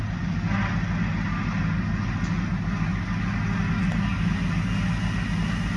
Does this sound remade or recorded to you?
recorded